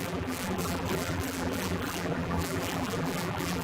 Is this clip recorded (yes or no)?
no